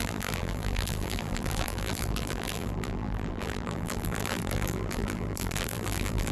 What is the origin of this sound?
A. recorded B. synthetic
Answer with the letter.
B